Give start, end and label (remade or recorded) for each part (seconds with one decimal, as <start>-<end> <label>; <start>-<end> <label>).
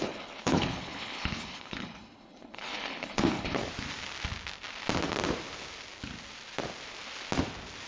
0.0-3.6 remade; 3.6-7.9 recorded